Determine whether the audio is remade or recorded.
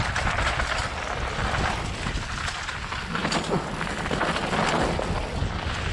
recorded